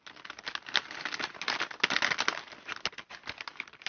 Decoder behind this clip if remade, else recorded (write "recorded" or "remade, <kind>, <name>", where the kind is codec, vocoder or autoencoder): recorded